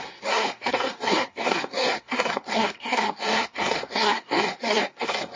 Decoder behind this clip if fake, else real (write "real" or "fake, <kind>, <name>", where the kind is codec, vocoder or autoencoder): fake, codec, SNAC